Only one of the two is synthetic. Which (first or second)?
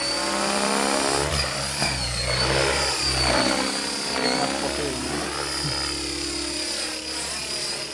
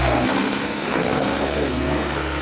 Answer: second